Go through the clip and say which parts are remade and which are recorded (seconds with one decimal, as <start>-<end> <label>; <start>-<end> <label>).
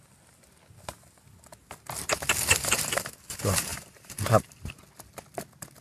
0.0-3.7 recorded; 3.7-4.7 remade; 4.7-5.8 recorded